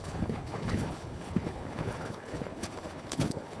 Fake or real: fake